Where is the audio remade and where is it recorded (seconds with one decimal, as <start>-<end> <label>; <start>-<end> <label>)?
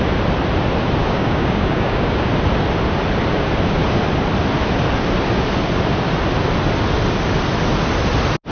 0.0-1.0 recorded; 1.0-2.3 remade; 2.3-8.5 recorded